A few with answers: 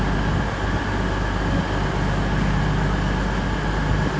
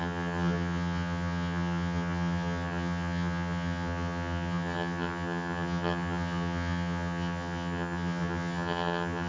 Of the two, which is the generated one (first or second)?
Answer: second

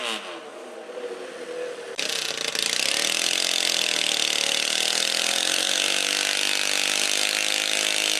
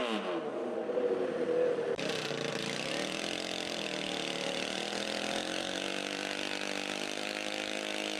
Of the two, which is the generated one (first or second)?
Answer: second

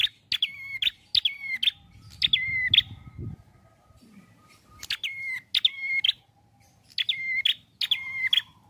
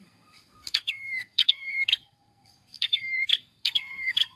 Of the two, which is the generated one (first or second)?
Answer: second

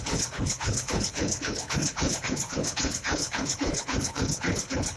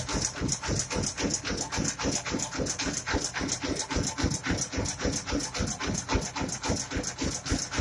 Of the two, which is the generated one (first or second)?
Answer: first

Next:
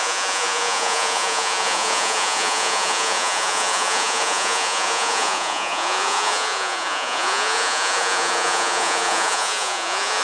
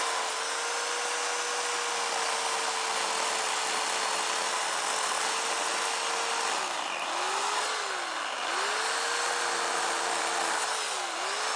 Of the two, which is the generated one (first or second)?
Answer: first